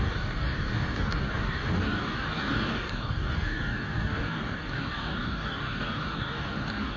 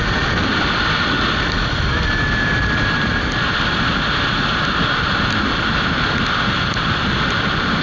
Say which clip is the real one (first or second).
second